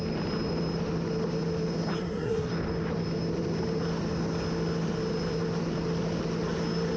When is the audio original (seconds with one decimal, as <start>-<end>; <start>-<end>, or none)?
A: 0.0-2.0; 2.5-7.0